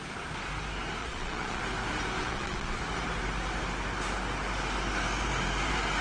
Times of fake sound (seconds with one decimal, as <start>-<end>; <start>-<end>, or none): 1.0-1.6; 2.2-2.8